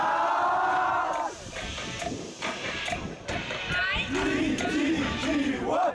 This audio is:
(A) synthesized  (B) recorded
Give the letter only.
B